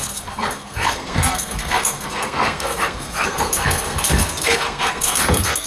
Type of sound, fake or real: fake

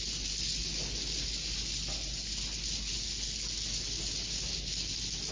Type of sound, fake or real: real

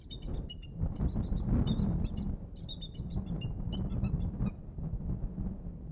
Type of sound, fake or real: real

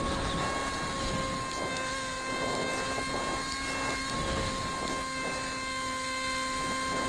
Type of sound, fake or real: real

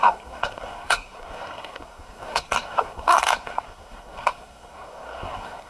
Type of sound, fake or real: fake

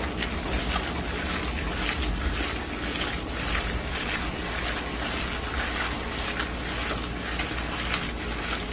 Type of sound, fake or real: real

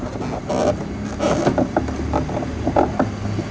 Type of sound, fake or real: real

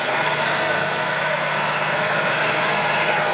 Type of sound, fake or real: fake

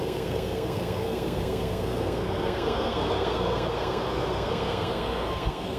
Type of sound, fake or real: fake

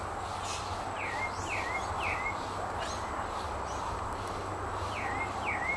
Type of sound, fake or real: real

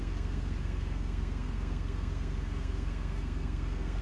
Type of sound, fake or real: fake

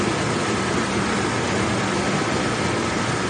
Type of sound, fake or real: real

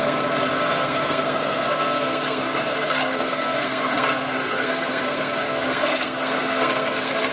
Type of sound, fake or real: fake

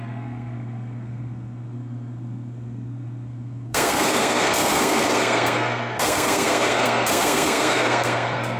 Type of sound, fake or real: fake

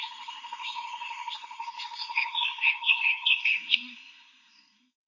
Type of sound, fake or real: fake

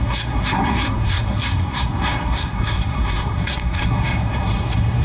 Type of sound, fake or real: fake